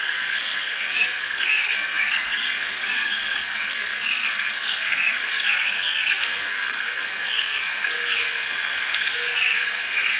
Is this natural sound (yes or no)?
no